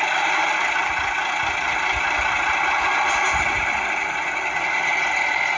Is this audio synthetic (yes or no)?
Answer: no